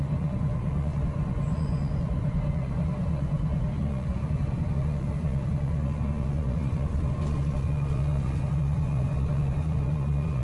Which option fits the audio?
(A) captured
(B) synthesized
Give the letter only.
B